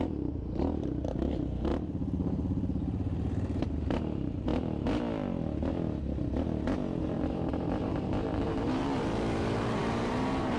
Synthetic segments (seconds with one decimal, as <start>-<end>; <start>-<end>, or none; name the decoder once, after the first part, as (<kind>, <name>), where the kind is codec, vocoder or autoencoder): 0.0-1.7 (vocoder, BigVGAN v2); 3.6-4.5; 7.0-10.6